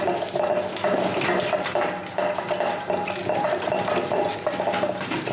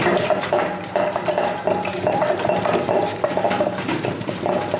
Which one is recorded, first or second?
first